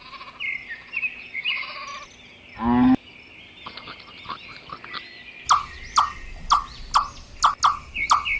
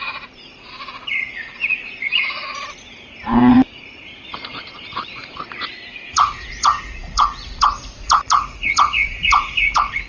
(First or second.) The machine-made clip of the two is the second